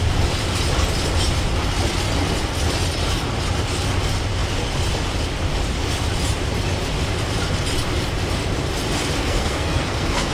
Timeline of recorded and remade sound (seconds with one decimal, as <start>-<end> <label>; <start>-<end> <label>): 0.0-9.2 recorded; 9.2-10.3 remade